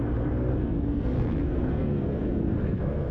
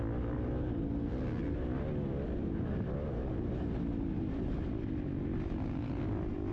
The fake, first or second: first